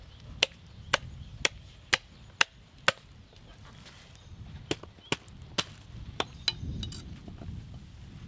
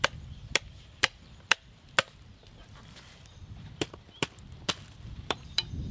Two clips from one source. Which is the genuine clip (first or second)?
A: first